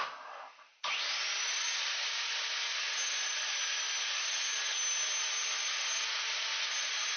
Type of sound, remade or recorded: recorded